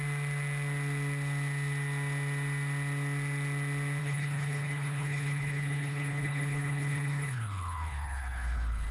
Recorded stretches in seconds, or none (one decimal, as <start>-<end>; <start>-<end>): 0.0-4.0